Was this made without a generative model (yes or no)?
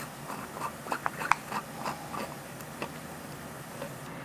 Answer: yes